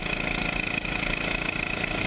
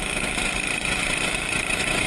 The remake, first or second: second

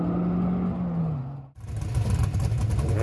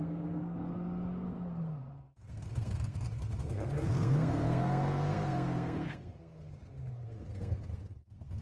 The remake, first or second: second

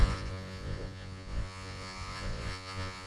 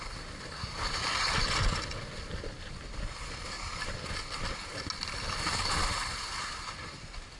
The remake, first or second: first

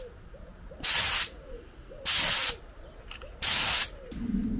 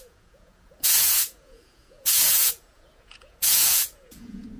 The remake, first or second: second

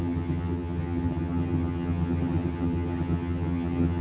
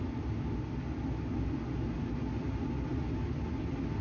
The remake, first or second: first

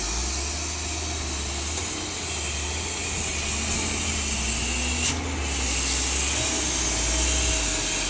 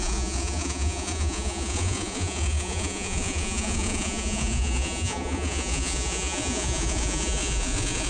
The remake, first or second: second